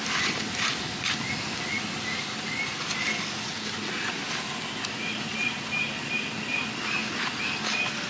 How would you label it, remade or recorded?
recorded